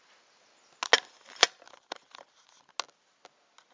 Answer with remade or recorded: recorded